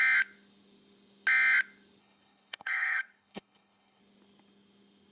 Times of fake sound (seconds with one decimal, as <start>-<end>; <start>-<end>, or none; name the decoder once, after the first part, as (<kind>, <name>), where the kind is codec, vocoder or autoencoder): 2.0-4.0 (codec, HILCodec)